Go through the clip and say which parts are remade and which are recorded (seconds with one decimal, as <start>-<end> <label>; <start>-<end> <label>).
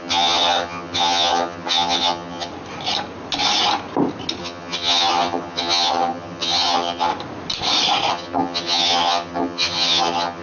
0.0-2.5 remade; 2.5-4.4 recorded; 4.4-7.1 remade; 7.1-8.1 recorded; 8.1-10.4 remade